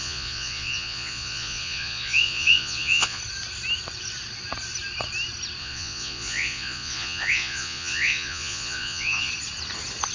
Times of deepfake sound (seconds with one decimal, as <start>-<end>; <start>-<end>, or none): 0.0-3.2; 5.6-9.3